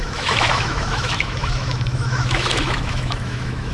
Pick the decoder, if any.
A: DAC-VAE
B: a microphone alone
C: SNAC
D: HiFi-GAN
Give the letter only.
A